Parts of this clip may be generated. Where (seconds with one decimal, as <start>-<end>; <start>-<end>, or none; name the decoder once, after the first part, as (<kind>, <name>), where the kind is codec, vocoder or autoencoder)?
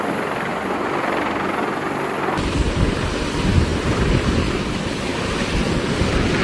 3.7-4.5 (vocoder, BigVGAN v2); 5.1-5.9